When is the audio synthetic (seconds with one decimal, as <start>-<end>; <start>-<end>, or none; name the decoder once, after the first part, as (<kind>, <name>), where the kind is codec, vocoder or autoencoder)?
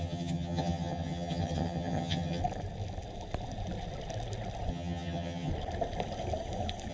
0.0-2.4 (vocoder, HiFi-GAN); 4.7-5.5